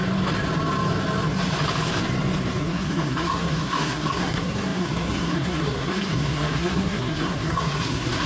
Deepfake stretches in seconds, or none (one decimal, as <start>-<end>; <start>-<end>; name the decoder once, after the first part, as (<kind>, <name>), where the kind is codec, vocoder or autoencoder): 2.6-8.3 (codec, SNAC)